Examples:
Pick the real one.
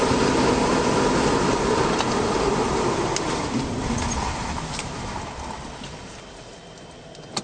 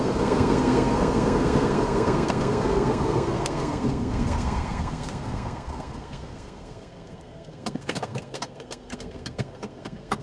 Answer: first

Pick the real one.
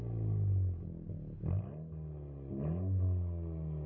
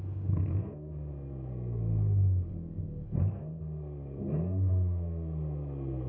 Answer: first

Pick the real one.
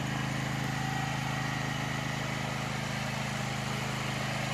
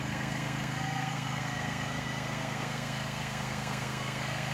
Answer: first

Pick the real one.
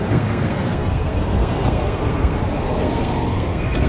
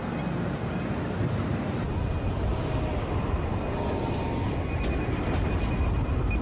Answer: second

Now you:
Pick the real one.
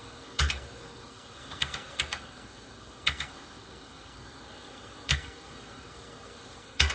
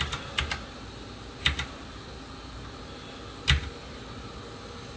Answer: second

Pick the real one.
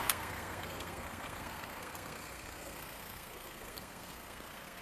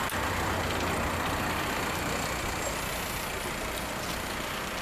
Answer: second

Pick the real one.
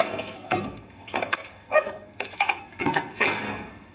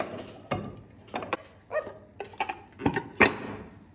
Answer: second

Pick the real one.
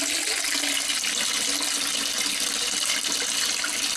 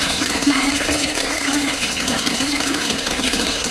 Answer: first